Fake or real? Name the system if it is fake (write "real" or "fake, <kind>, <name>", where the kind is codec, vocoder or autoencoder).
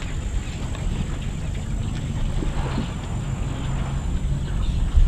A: real